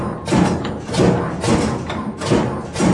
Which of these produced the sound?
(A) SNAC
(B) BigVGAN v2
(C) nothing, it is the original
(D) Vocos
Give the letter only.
C